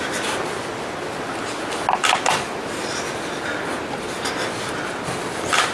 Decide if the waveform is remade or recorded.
recorded